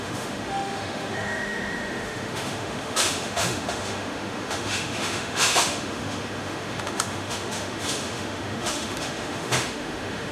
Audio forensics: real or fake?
fake